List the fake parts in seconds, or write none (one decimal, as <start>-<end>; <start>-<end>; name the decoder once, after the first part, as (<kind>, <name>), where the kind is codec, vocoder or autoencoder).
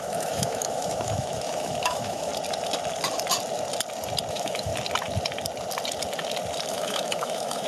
0.0-2.3 (autoencoder, DAC-VAE); 4.3-4.7; 6.7-7.7